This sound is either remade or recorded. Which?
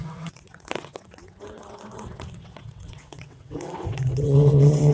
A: remade